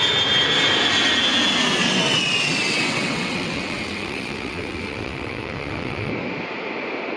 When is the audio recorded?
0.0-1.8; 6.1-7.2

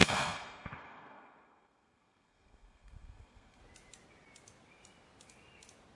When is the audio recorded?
3.6-6.0

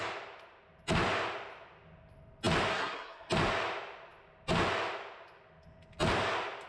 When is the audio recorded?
0.0-2.7; 3.3-6.7

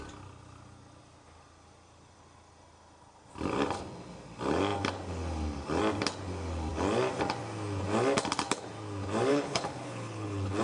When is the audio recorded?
0.0-9.3

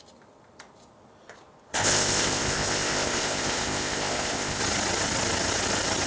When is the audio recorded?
0.0-1.7; 4.6-6.1